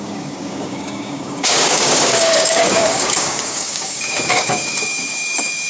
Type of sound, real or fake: fake